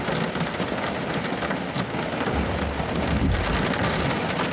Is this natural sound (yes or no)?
yes